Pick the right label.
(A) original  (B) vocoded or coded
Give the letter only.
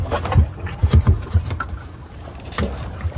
B